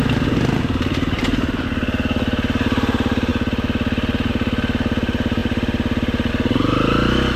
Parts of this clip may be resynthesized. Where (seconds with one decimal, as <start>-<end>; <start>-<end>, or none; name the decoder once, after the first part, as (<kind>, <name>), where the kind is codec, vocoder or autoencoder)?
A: none